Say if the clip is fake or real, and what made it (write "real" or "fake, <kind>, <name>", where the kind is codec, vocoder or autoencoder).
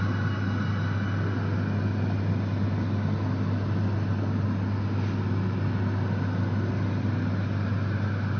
real